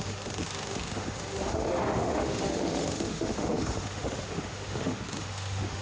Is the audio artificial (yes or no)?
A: yes